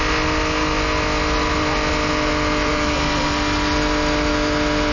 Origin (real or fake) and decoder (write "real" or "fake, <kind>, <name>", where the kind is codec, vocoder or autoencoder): real